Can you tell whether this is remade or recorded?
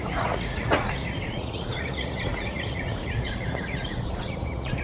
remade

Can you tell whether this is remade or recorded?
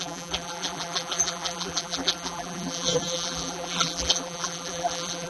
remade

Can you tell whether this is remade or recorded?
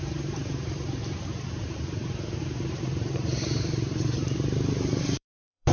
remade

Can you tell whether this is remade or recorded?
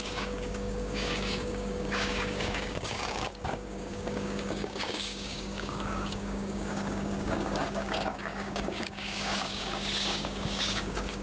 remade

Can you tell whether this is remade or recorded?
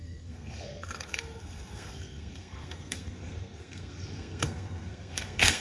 remade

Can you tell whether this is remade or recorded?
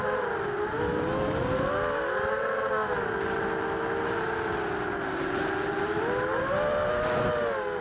recorded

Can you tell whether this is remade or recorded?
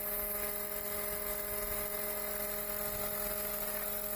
recorded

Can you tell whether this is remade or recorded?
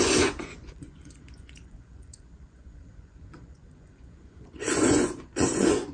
remade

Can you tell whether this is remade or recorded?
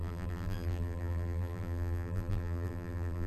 remade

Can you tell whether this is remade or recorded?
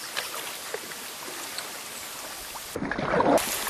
recorded